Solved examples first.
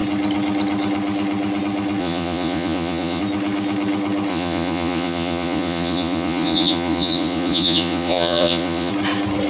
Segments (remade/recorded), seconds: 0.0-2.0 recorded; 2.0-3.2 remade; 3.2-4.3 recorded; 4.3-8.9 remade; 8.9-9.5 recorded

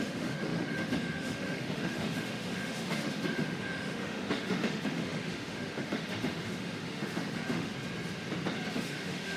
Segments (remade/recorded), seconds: 0.0-7.7 remade; 7.7-8.7 recorded; 8.7-9.4 remade

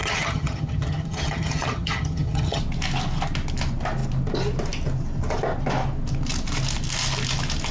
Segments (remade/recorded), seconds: 0.0-2.6 remade; 2.6-7.7 recorded

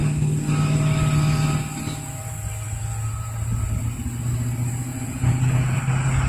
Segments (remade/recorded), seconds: 0.0-4.9 recorded; 4.9-5.8 remade; 5.8-6.3 recorded